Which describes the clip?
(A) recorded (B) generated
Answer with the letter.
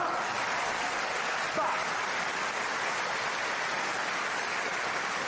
A